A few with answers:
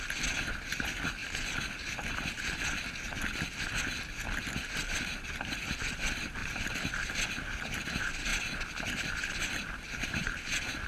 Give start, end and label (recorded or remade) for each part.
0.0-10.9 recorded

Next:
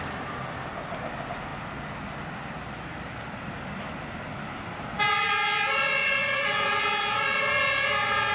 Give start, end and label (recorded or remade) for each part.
0.0-6.0 recorded; 6.0-6.8 remade; 6.8-8.3 recorded

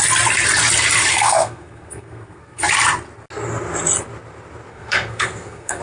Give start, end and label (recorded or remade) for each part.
0.0-1.1 recorded; 1.1-2.6 remade; 2.6-4.7 recorded; 4.7-5.8 remade

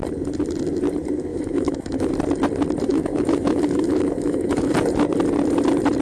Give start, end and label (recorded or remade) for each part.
0.0-1.3 recorded; 1.3-2.1 remade; 2.1-2.9 recorded; 2.9-4.7 remade; 4.7-6.0 recorded

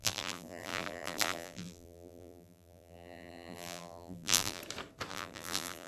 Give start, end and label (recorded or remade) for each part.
0.0-4.6 remade; 4.6-5.1 recorded; 5.1-5.9 remade

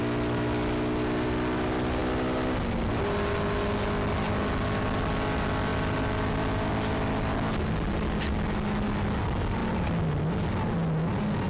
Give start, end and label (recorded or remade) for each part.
0.0-11.5 recorded

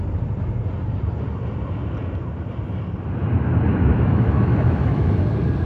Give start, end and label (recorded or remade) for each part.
0.0-3.7 recorded; 3.7-5.2 remade; 5.2-5.7 recorded